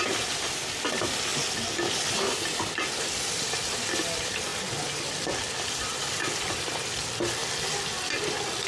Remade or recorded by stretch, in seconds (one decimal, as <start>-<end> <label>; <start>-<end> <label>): 0.0-1.3 remade; 1.3-1.9 recorded; 1.9-4.5 remade; 4.5-5.1 recorded; 5.1-7.4 remade; 7.4-8.0 recorded; 8.0-8.7 remade